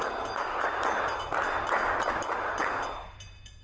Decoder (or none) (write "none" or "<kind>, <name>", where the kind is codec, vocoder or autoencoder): none